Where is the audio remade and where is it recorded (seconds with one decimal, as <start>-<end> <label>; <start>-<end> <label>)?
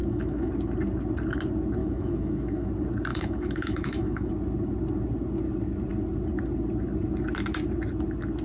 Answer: 0.0-0.5 remade; 0.5-1.8 recorded; 1.8-2.7 remade; 2.7-3.1 recorded; 3.1-4.3 remade; 4.3-8.4 recorded